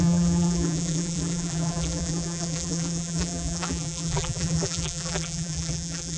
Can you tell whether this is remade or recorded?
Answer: remade